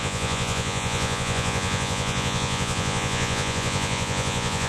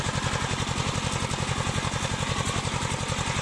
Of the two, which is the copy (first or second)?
first